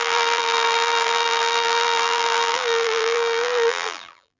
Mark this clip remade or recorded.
remade